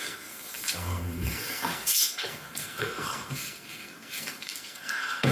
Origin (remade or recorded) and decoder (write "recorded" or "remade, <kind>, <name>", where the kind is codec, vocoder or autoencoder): remade, codec, SNAC